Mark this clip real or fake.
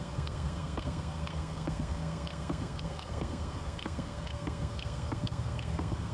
fake